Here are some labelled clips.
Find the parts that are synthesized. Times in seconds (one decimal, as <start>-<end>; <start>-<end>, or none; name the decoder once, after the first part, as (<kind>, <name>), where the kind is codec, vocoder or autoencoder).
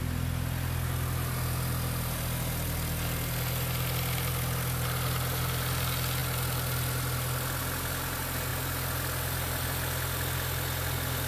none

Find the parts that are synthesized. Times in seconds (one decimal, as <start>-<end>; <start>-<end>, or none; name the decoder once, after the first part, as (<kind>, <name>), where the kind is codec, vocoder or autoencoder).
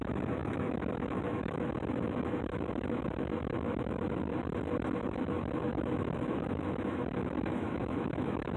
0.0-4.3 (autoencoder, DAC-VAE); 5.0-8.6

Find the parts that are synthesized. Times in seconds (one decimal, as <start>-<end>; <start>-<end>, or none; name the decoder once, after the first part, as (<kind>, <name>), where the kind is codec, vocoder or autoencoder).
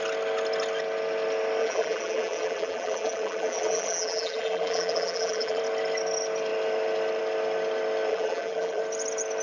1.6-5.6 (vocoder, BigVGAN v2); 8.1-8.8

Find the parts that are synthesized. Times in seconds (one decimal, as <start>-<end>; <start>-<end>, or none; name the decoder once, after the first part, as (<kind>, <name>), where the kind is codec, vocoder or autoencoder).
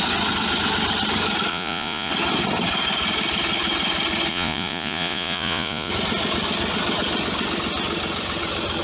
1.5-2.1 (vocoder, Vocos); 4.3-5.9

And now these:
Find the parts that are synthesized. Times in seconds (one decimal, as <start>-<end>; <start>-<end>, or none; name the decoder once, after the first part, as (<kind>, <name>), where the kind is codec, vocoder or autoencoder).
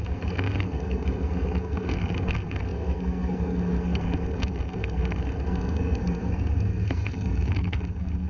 0.0-8.3 (codec, SNAC)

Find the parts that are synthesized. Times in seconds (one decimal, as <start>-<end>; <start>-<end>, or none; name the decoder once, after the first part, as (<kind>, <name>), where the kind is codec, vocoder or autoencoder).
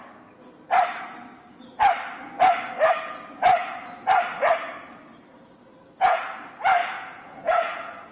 6.8-8.1 (vocoder, Vocos)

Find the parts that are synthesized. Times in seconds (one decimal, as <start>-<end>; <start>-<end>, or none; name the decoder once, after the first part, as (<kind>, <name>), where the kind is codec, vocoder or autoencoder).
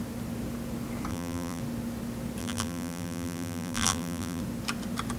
1.1-1.6 (vocoder, BigVGAN v2); 2.4-4.4